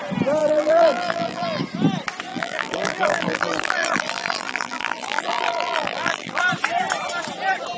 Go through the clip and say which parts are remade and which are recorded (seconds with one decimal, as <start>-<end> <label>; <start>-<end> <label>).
0.0-0.4 recorded; 0.4-1.6 remade; 1.6-2.3 recorded; 2.3-6.4 remade; 6.4-7.8 recorded

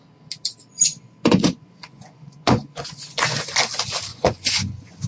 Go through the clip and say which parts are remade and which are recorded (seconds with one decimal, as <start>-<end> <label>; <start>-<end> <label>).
0.0-0.7 recorded; 0.7-3.5 remade; 3.5-4.1 recorded; 4.1-5.1 remade